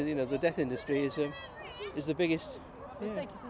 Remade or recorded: recorded